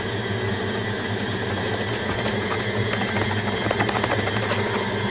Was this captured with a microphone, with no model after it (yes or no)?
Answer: yes